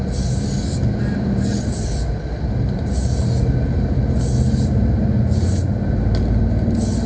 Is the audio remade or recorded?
recorded